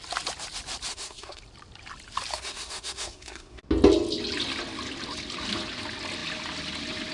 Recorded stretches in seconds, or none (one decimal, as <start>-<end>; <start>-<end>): 0.0-0.9; 1.4-2.3; 3.6-7.1